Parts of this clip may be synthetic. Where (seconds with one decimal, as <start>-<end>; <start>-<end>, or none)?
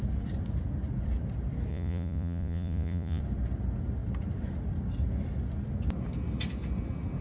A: 1.7-3.2